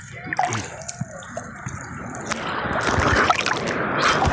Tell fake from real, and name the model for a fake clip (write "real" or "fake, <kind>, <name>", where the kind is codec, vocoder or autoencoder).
real